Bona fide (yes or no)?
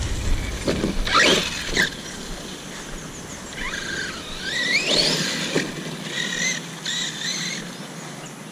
yes